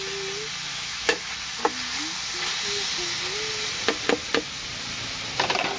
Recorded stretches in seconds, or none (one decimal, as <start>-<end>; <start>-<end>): 0.0-0.7; 1.3-5.8